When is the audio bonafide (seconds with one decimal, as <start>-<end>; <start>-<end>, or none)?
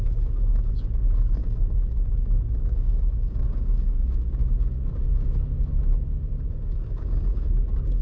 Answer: 4.4-6.5